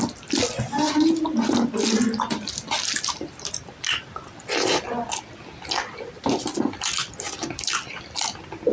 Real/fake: real